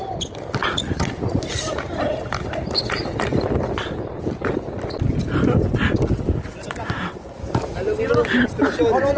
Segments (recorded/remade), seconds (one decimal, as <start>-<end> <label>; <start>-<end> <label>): 0.0-0.6 recorded; 0.6-1.4 remade; 1.4-9.2 recorded